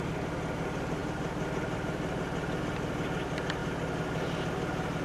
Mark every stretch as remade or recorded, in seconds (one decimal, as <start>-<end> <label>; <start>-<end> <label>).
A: 0.0-5.0 recorded